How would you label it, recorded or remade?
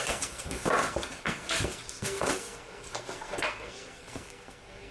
remade